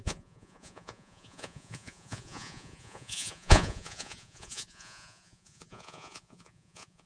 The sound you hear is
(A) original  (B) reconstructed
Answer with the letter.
B